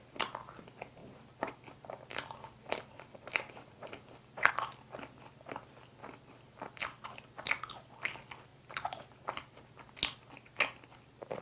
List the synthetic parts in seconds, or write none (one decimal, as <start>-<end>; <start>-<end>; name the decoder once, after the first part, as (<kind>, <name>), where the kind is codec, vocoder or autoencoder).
1.0-4.5 (vocoder, BigVGAN v2); 6.0-6.8; 8.5-9.7